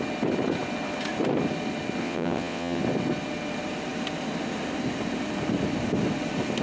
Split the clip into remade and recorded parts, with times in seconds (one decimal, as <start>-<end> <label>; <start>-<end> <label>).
0.0-2.0 recorded; 2.0-2.8 remade; 2.8-6.6 recorded